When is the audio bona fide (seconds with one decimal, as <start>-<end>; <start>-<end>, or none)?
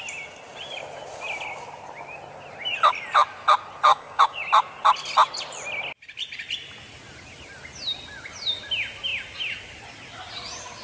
0.0-3.9; 4.4-10.8